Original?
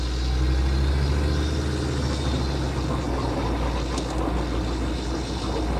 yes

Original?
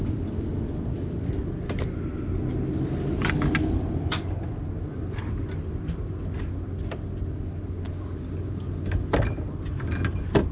yes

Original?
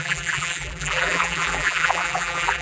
no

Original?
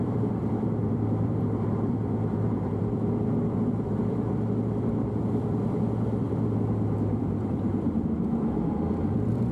no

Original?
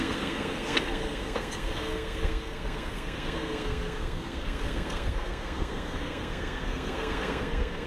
no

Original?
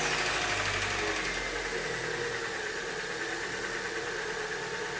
yes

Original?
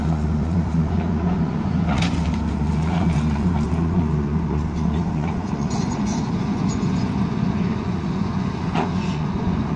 no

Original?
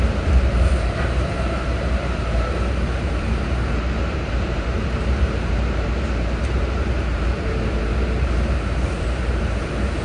no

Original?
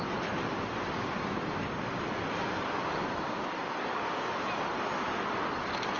yes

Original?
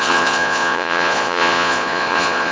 no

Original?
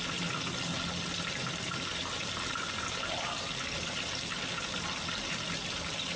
yes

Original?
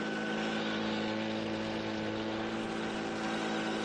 yes